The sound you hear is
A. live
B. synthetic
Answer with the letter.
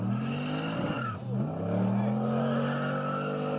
A